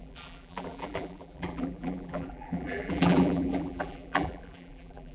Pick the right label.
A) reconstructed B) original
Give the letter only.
A